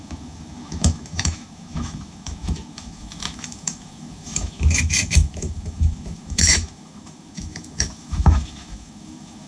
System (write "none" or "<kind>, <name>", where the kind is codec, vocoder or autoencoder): autoencoder, DAC-VAE